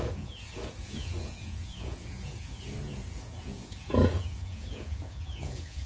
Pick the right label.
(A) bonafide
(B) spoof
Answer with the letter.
B